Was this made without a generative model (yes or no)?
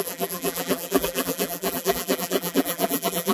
no